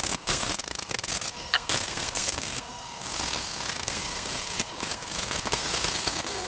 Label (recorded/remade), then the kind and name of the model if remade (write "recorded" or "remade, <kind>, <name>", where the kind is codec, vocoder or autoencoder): remade, codec, SNAC